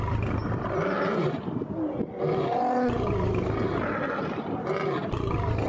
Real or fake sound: real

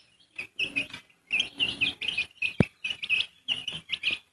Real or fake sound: fake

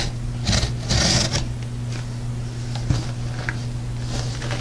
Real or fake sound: real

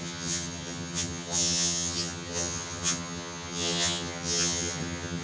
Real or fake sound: fake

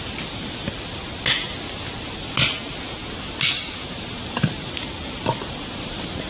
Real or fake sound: real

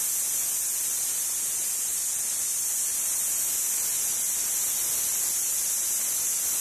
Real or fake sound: real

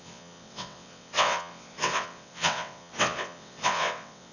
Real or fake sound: fake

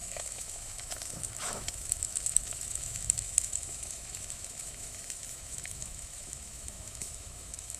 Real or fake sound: fake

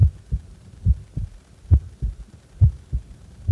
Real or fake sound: real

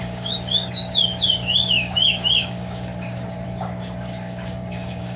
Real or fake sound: fake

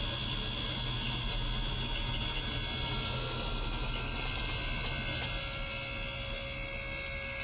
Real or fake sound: real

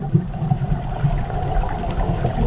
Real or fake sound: real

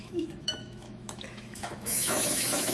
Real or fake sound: fake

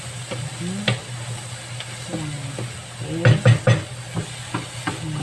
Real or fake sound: real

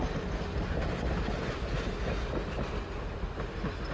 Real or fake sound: real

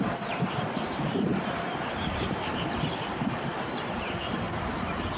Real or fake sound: fake